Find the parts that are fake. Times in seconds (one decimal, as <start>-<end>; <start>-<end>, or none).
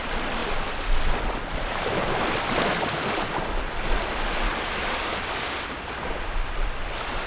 none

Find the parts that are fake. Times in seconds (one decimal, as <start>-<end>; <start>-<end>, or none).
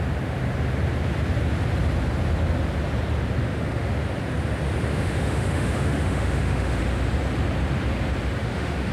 3.4-3.9; 4.9-6.8; 8.4-8.9